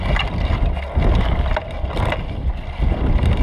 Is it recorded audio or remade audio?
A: recorded